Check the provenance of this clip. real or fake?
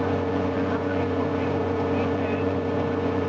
fake